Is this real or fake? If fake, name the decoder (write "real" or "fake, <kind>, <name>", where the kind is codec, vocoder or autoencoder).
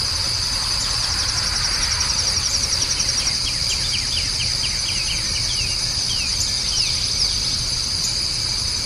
real